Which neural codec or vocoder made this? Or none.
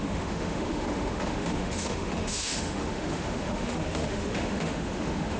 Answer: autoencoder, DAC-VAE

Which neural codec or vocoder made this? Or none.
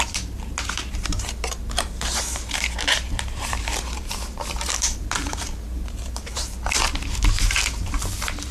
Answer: vocoder, BigVGAN v2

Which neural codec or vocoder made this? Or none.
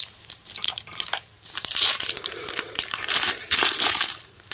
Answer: vocoder, BigVGAN v2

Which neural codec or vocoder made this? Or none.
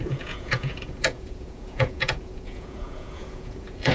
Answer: vocoder, Vocos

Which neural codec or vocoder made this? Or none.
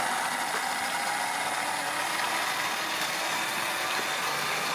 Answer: none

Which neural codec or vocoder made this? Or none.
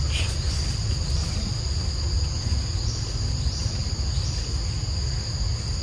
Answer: none